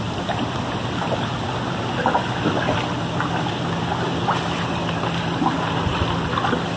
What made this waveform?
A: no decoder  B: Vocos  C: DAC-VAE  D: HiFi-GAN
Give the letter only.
A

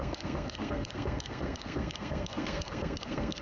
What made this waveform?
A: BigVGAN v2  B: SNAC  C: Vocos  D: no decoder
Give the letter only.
B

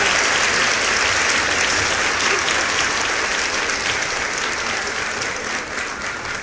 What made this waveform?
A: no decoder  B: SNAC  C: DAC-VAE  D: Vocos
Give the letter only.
A